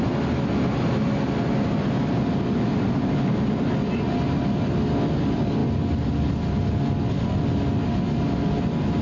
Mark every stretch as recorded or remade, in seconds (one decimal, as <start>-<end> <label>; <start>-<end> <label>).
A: 0.0-9.0 recorded